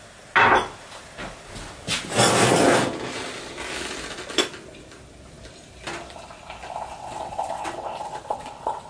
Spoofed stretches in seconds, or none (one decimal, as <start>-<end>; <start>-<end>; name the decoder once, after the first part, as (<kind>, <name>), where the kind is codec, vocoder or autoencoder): 6.9-8.9 (vocoder, WaveNeXt)